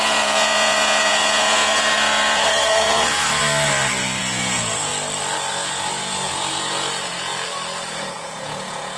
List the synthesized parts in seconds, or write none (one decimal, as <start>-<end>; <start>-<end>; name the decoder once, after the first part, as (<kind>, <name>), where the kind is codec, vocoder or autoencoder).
0.0-3.4 (vocoder, Vocos); 4.2-4.9; 5.5-7.3; 7.9-9.0